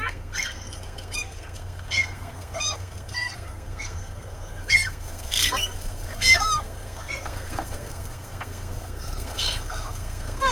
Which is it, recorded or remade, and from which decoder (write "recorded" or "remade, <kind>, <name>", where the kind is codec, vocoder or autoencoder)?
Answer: remade, codec, SNAC